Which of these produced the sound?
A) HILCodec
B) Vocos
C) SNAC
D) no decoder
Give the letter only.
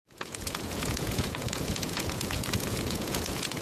B